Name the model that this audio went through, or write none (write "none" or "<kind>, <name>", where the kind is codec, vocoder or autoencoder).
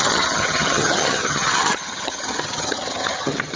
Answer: vocoder, HiFi-GAN